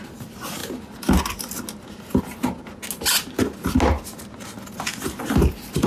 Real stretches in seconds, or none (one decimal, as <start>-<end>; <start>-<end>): 0.0-5.9